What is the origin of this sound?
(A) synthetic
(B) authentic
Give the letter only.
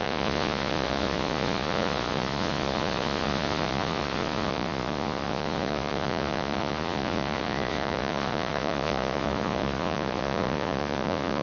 A